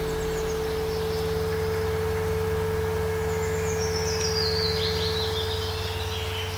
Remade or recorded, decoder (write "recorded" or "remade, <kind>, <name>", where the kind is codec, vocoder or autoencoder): recorded